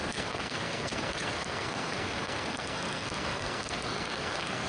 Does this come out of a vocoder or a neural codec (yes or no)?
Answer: yes